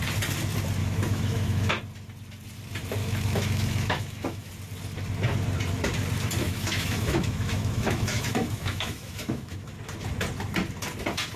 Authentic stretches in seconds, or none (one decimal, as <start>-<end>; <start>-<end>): 0.0-0.8; 1.7-3.0; 4.5-6.4; 9.7-11.4